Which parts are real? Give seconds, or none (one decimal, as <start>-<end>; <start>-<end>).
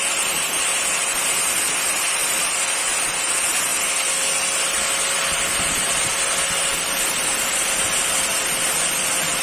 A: 0.0-9.4